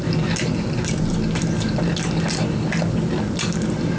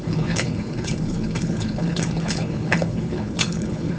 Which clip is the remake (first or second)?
second